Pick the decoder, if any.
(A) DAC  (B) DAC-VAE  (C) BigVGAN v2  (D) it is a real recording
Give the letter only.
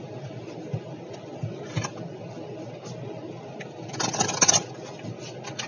D